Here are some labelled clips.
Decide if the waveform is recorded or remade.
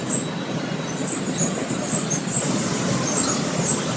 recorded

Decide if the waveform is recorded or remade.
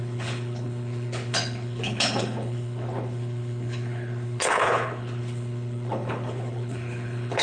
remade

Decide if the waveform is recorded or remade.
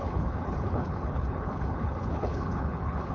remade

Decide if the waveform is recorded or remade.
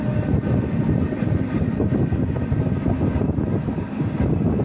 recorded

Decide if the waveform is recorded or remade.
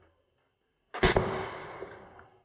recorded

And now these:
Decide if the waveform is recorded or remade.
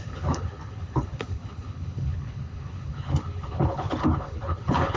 remade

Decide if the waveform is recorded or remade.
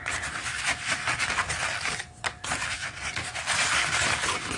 recorded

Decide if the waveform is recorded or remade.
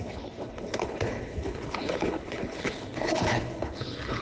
remade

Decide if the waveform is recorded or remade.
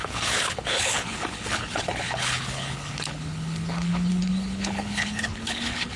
remade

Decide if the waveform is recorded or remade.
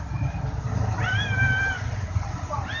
recorded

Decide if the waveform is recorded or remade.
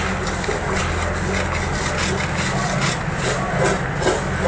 recorded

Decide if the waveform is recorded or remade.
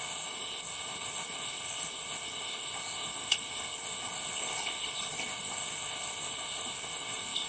remade